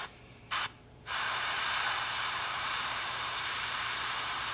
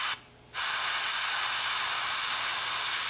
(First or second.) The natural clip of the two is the second